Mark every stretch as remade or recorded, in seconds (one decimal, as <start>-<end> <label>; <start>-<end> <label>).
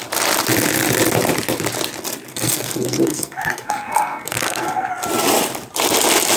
0.0-2.3 recorded; 2.3-4.9 remade; 4.9-6.4 recorded